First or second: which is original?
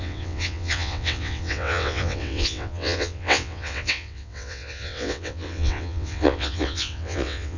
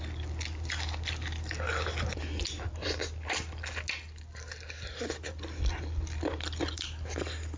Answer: second